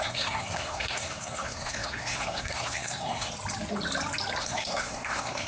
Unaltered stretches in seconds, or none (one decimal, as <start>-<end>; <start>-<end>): 3.3-4.4